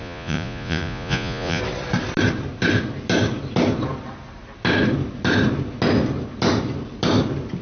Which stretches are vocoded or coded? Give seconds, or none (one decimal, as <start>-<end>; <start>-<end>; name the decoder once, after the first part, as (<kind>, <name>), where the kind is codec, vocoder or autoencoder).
0.0-1.6 (vocoder, Vocos)